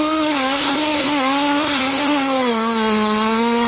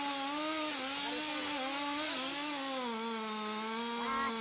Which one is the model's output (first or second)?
first